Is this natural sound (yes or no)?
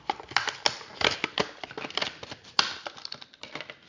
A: no